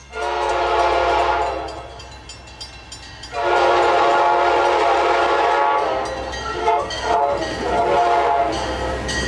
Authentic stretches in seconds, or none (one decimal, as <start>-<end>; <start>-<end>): 0.5-6.6; 7.2-9.3